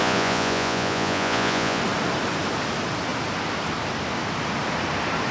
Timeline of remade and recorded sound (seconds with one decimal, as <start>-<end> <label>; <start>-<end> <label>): 0.0-1.8 remade; 1.8-5.3 recorded